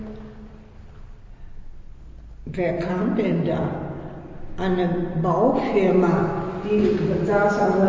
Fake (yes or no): no